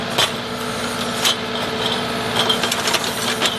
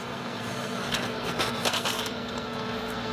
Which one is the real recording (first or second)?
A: first